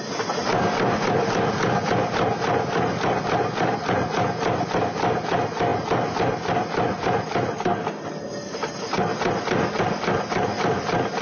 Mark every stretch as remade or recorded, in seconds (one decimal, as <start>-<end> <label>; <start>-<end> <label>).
0.0-11.2 recorded

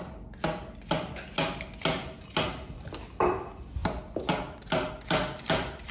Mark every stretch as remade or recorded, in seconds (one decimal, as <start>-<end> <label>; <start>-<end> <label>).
0.0-5.9 recorded

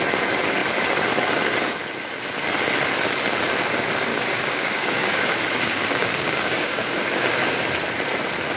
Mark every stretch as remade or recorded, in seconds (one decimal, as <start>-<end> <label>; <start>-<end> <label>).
0.0-4.1 recorded; 4.1-7.5 remade; 7.5-8.6 recorded

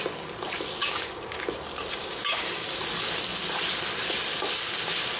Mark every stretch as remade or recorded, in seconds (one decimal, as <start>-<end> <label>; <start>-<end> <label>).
0.0-0.8 recorded; 0.8-1.4 remade; 1.4-2.0 recorded; 2.0-2.7 remade; 2.7-5.2 recorded